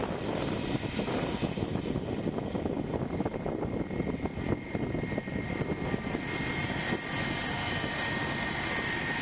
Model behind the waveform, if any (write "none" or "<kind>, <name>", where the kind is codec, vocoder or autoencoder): none